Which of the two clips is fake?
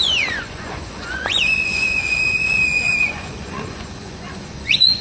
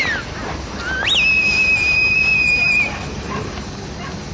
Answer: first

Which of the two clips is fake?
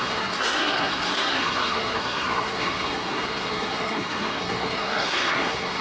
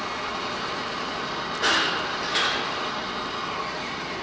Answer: first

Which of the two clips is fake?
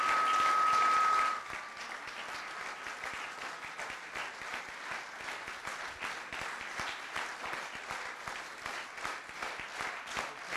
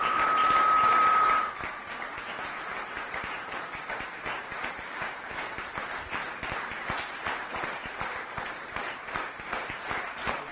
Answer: second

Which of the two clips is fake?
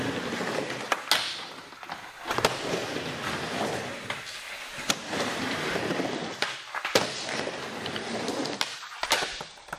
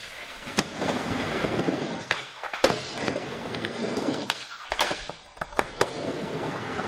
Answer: second